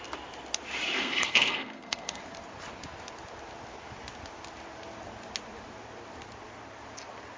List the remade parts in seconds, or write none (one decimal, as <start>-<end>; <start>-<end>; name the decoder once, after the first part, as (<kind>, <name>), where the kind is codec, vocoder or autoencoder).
0.9-2.2 (codec, SNAC)